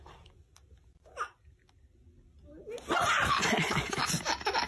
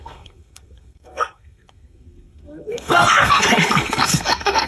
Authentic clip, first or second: first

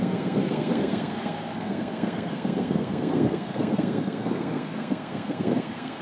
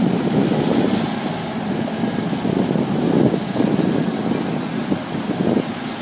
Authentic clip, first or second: second